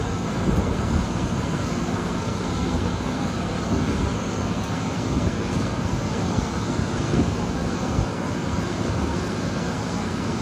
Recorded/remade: remade